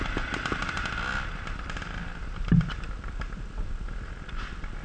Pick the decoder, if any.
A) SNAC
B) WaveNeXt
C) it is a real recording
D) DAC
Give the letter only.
C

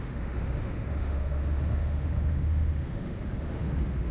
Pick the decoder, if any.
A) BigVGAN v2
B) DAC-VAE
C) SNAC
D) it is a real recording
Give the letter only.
B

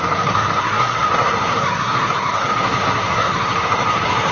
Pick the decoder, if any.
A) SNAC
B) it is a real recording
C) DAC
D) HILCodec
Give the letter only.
A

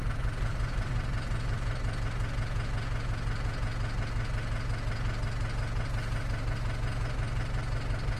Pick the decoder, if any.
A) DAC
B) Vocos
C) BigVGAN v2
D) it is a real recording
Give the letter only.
D